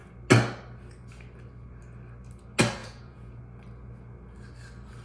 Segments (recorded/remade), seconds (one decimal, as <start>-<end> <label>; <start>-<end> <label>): 0.0-2.8 recorded; 2.8-3.4 remade; 3.4-5.0 recorded